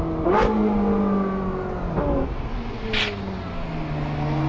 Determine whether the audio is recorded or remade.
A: recorded